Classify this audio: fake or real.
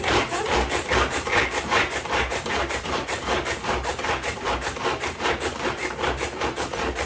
fake